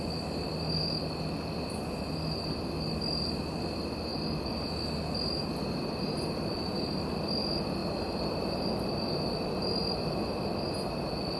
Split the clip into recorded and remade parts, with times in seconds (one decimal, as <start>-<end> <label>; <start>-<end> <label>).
0.0-11.4 recorded